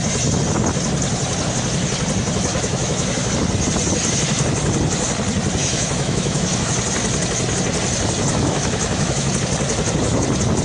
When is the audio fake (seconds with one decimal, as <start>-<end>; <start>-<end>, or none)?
2.5-3.3; 5.6-6.7; 8.3-9.3